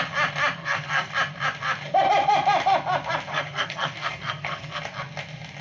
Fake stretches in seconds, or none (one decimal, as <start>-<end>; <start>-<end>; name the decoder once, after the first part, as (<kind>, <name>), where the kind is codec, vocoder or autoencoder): 0.6-1.1 (codec, SNAC); 3.3-4.8